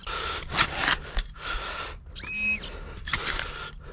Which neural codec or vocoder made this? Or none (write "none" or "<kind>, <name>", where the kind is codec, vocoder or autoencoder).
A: none